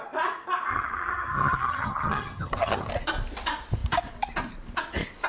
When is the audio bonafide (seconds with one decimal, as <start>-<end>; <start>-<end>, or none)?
0.0-0.7; 2.9-5.3